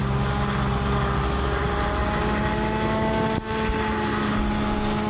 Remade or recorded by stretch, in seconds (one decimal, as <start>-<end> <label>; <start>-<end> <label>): 0.0-5.1 recorded